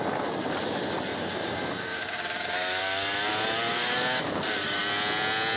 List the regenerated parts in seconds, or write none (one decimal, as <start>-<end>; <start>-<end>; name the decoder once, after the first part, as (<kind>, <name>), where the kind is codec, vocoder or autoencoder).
1.1-2.8 (codec, DAC); 3.7-4.8